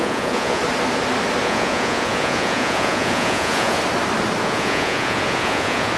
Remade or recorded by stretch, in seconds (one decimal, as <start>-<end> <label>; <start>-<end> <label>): 0.0-0.6 remade; 0.6-1.4 recorded; 1.4-3.8 remade; 3.8-4.4 recorded; 4.4-6.0 remade